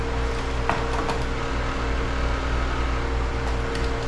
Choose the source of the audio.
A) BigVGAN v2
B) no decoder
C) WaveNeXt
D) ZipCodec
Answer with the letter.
B